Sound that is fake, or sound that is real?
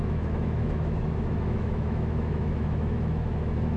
fake